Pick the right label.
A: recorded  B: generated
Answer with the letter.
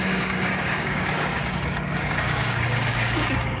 B